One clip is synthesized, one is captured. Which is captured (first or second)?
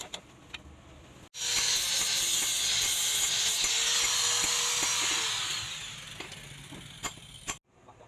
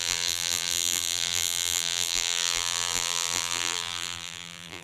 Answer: first